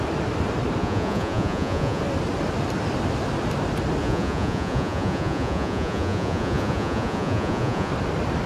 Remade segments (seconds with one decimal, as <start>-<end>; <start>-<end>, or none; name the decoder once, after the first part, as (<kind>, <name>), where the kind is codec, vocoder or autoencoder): 0.8-2.0 (vocoder, Vocos); 4.0-7.9